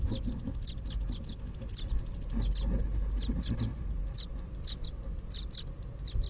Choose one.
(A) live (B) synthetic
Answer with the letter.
A